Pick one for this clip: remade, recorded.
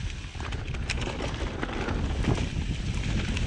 recorded